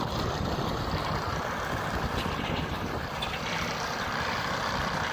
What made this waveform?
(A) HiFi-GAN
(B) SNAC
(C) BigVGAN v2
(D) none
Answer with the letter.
C